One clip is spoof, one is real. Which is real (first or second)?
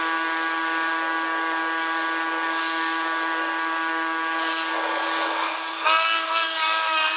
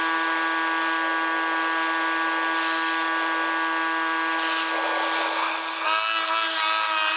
second